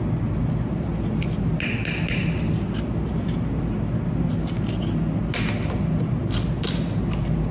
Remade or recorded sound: recorded